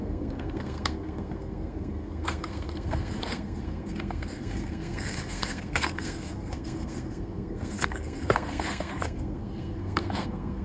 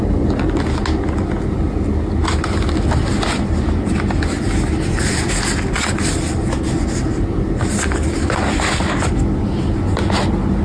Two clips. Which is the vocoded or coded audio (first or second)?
first